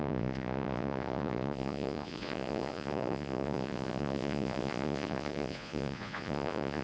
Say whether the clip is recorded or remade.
remade